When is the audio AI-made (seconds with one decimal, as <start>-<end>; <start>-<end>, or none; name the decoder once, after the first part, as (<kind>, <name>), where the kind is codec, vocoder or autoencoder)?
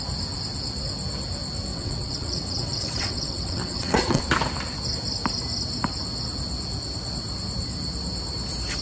1.7-4.2 (vocoder, WaveNeXt)